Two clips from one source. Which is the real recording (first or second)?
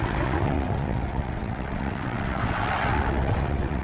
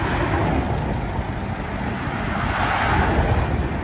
second